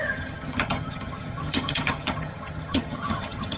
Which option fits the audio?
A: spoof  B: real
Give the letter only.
A